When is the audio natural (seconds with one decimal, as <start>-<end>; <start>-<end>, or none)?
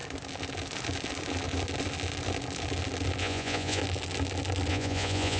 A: 0.0-3.2; 3.8-4.7